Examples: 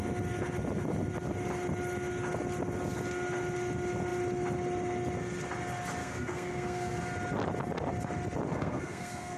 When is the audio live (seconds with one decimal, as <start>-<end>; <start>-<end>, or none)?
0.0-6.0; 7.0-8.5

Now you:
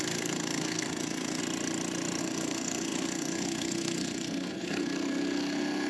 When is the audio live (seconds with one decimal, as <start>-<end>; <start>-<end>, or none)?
1.4-2.2

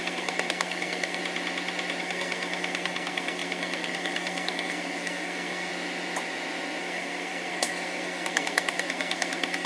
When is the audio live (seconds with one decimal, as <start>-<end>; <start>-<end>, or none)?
1.2-2.0; 5.7-6.8

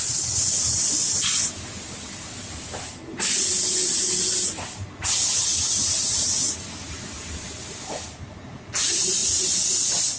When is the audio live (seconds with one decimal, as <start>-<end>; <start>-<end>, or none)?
0.0-10.2